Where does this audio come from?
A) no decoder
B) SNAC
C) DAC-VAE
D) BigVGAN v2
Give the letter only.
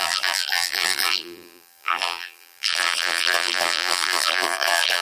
D